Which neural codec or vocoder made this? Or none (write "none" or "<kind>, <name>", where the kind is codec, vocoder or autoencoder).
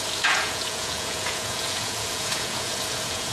vocoder, Vocos